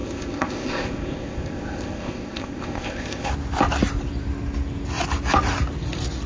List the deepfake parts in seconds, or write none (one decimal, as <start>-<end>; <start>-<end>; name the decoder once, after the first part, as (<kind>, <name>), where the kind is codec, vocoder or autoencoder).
0.0-3.3 (codec, ZipCodec)